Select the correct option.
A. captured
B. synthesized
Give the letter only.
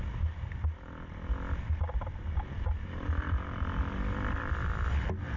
A